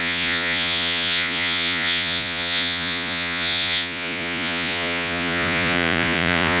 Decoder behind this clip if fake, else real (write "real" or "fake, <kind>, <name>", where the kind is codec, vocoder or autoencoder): fake, vocoder, Vocos